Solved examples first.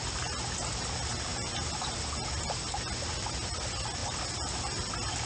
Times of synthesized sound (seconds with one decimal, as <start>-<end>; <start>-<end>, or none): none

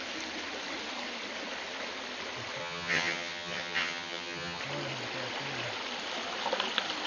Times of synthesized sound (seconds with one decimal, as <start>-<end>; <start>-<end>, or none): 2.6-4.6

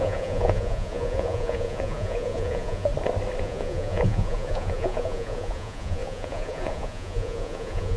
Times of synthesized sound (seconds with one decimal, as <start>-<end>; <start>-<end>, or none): 0.0-2.9; 3.4-8.0

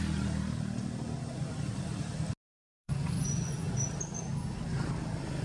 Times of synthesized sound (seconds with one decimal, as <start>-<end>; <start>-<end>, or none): 2.5-3.8

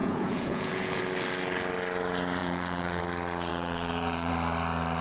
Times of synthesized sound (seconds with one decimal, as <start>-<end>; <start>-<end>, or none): 0.0-1.0; 2.4-3.0; 3.5-4.3

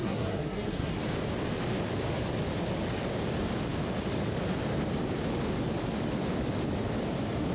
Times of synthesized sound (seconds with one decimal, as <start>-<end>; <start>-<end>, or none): 0.0-1.0